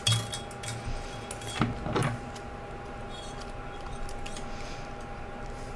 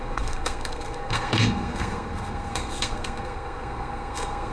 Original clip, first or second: first